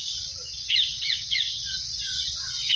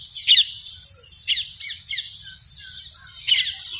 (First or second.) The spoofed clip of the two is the first